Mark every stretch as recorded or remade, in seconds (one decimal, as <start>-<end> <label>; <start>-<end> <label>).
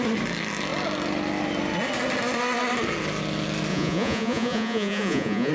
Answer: 0.0-3.7 recorded; 3.7-5.5 remade